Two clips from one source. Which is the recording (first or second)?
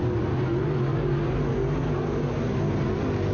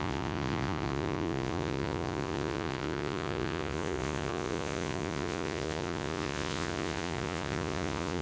first